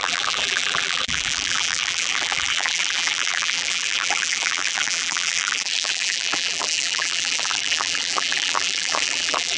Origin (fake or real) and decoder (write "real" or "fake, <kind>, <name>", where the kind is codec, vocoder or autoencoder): fake, vocoder, BigVGAN v2